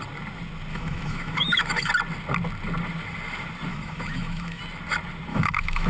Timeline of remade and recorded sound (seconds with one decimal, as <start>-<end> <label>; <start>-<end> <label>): 0.0-0.7 recorded; 0.7-1.9 remade; 1.9-3.7 recorded; 3.7-4.6 remade; 4.6-5.3 recorded; 5.3-5.9 remade